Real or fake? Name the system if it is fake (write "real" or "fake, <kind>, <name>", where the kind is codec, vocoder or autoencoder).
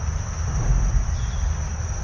real